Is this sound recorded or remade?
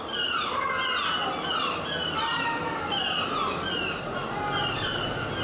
recorded